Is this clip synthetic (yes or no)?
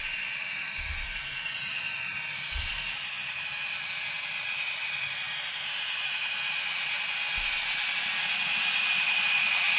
no